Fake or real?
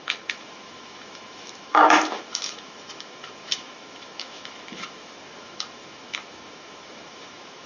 fake